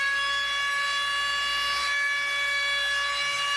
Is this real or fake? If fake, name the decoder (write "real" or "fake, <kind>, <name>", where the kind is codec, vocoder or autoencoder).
real